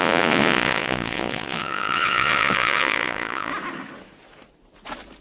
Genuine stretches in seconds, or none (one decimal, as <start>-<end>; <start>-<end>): 3.5-5.2